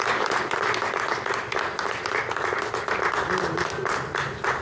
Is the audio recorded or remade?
recorded